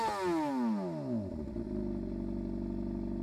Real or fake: real